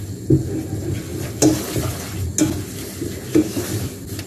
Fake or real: real